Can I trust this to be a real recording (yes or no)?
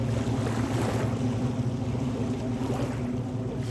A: yes